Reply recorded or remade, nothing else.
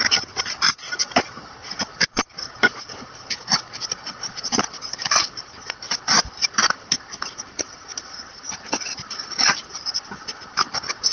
recorded